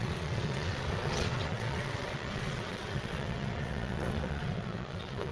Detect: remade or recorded remade